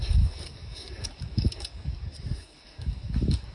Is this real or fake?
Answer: fake